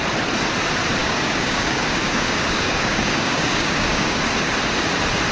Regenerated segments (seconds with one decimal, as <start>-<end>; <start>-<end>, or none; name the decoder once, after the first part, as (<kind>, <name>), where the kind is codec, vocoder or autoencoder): 1.0-4.2 (codec, DAC)